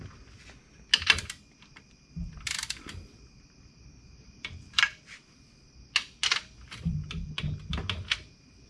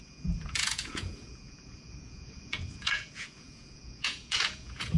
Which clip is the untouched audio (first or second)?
first